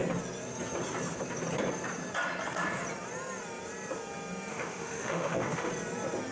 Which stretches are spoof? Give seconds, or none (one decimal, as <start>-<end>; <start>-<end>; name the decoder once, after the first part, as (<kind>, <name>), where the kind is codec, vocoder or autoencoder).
4.5-5.7 (autoencoder, DAC-VAE)